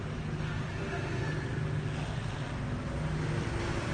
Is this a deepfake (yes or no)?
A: no